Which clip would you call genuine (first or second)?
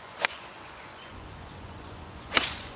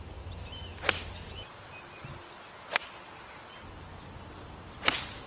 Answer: second